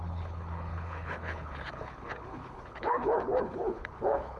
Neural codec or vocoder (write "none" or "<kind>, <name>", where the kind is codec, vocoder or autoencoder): codec, HILCodec